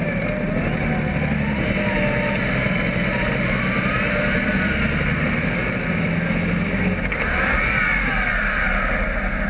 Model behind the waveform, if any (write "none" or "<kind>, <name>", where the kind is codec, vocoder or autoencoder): none